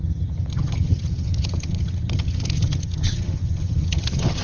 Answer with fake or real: fake